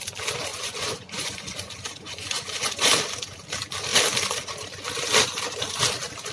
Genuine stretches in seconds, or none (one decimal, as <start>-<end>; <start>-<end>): 0.0-0.5; 2.9-6.3